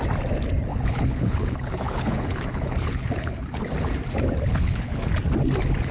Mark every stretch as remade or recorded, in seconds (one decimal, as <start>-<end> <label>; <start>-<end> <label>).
0.0-0.7 recorded; 0.7-3.6 remade; 3.6-4.5 recorded; 4.5-5.1 remade; 5.1-5.9 recorded